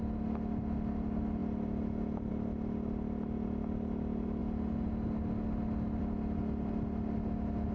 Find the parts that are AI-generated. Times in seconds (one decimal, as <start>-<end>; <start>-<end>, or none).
none